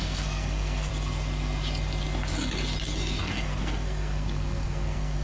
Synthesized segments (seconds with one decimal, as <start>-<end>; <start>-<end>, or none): 0.0-0.9; 3.2-5.2